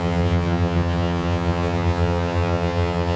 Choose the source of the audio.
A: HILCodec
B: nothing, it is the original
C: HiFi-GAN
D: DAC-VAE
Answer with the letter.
C